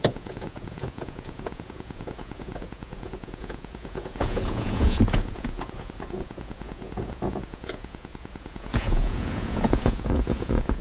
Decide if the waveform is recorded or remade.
remade